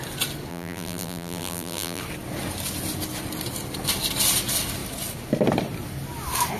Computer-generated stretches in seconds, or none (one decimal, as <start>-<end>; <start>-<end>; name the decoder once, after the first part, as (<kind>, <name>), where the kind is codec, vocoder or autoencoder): 0.5-2.0 (vocoder, BigVGAN v2)